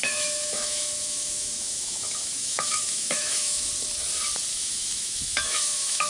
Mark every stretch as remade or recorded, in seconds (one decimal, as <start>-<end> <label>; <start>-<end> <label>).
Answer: 0.0-3.7 remade; 3.7-4.5 recorded; 4.5-6.1 remade